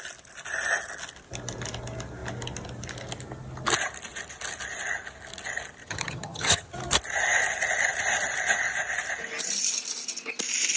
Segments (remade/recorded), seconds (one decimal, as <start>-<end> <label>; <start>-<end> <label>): 0.0-5.8 recorded; 5.8-6.7 remade; 6.7-10.8 recorded